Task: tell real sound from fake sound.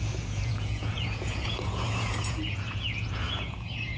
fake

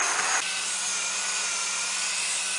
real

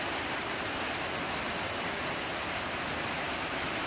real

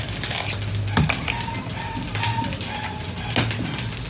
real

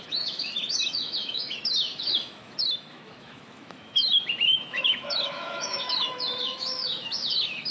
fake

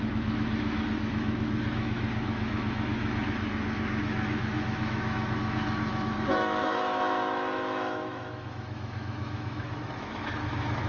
fake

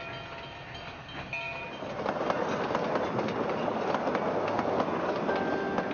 real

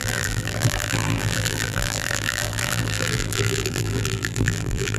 fake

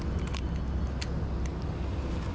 real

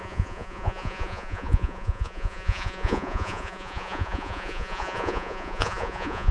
fake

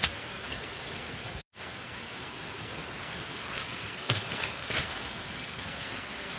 fake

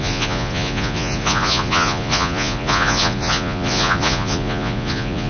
fake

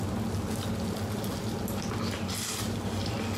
real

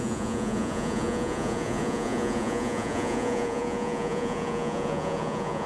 fake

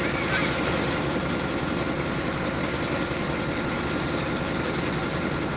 real